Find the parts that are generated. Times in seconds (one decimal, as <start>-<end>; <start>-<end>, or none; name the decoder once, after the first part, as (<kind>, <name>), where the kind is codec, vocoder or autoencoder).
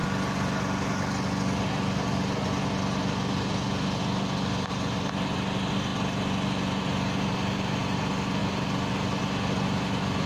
none